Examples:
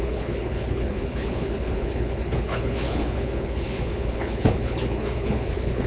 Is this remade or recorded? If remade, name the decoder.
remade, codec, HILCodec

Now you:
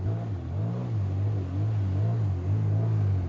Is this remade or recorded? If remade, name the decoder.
recorded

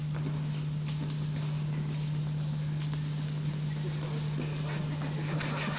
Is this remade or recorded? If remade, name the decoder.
recorded